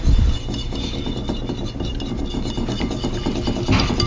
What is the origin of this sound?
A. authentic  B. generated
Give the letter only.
A